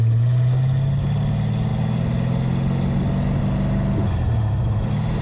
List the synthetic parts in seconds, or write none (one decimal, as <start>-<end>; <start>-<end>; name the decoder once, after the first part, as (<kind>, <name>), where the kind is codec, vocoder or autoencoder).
none